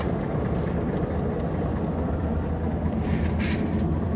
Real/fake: real